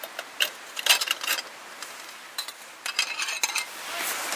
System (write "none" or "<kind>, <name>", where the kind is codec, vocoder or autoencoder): none